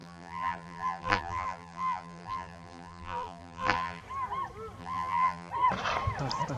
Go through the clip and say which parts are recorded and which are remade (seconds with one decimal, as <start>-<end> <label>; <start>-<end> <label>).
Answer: 0.0-4.0 remade; 4.0-4.8 recorded; 4.8-5.5 remade; 5.5-6.6 recorded